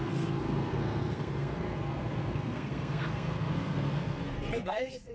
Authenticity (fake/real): fake